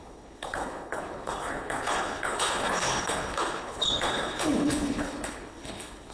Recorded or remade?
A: remade